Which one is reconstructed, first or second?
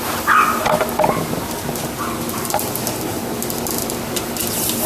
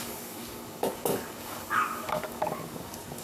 second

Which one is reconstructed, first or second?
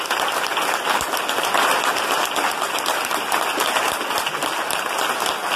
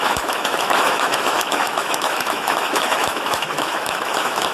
second